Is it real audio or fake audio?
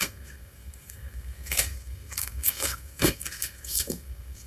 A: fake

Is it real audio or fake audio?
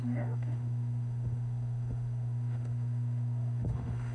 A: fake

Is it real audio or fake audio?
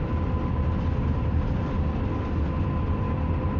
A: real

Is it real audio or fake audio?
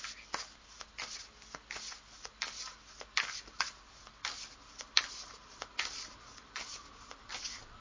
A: real